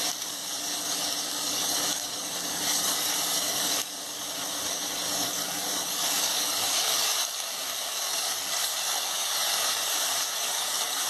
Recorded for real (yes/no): no